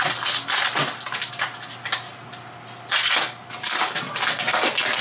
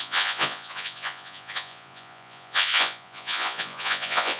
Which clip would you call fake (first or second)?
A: second